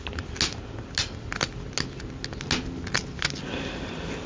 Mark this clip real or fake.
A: real